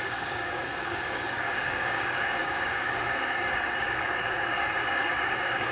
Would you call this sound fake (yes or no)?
yes